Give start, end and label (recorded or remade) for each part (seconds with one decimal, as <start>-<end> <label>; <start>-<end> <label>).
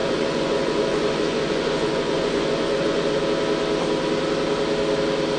0.0-3.2 remade; 3.2-5.4 recorded